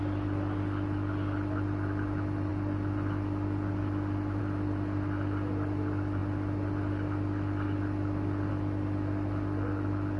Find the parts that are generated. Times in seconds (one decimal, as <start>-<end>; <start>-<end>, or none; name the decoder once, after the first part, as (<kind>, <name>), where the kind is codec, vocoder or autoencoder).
none